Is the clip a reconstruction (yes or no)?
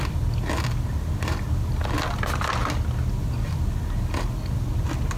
no